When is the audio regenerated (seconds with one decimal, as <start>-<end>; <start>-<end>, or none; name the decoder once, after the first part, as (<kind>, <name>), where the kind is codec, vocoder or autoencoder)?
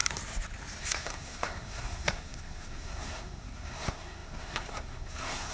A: 0.8-5.5 (codec, SNAC)